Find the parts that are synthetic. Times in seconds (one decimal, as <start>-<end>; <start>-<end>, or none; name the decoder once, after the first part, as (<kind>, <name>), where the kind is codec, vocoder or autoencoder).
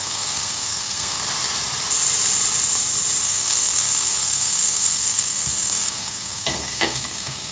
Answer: 0.0-1.2 (codec, SNAC); 3.2-7.5